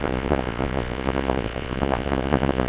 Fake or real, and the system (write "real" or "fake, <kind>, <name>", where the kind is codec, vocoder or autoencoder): fake, vocoder, Vocos